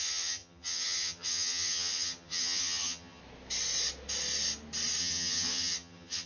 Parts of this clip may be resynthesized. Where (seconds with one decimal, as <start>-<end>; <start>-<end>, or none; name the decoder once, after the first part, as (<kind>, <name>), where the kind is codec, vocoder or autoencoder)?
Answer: 0.0-3.2 (vocoder, HiFi-GAN); 5.0-6.3